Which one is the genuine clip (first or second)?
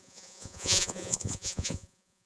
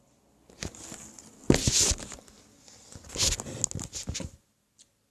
second